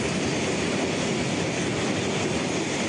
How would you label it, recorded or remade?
recorded